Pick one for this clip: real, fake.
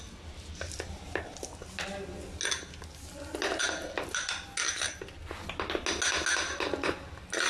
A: real